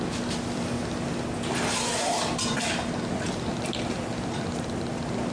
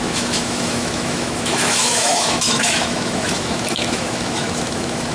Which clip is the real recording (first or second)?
first